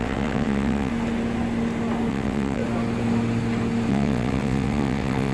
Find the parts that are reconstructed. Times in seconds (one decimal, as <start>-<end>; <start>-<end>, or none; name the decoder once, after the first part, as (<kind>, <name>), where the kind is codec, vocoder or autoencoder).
0.0-0.9 (vocoder, WaveNeXt); 2.1-2.6; 3.9-5.3